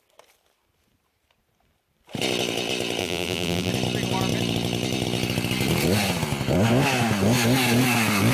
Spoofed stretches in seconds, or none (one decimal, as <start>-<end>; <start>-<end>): 3.0-3.7